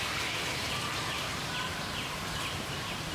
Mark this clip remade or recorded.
remade